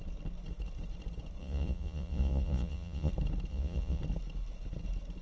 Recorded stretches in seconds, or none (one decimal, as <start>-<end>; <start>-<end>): 0.0-1.4; 3.1-3.5; 4.0-5.2